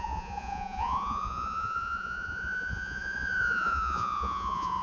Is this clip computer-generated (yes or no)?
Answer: yes